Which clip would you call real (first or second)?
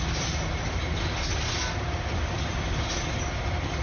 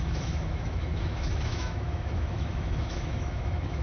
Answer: first